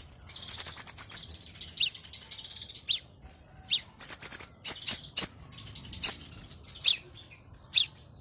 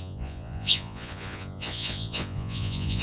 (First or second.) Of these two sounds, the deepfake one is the second